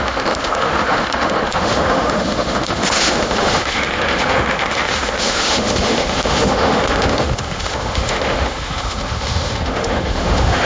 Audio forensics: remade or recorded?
remade